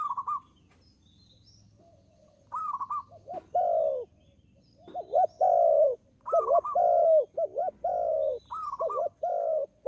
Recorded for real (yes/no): yes